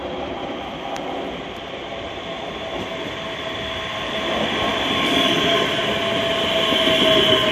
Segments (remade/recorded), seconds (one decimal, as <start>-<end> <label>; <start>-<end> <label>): 0.0-7.5 recorded